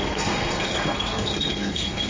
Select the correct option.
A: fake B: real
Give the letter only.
A